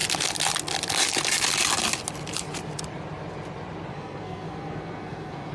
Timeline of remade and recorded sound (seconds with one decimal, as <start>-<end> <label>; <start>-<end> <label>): 0.0-3.9 recorded; 3.9-5.5 remade